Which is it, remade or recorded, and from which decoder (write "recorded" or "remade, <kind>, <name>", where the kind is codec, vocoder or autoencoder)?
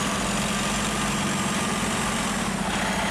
recorded